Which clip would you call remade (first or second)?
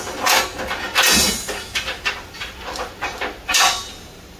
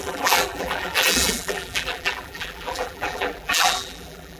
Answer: second